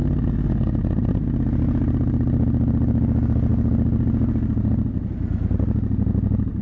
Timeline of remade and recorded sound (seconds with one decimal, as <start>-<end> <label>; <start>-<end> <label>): 0.0-6.6 recorded